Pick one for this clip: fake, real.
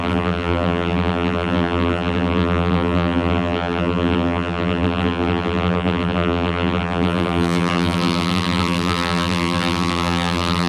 fake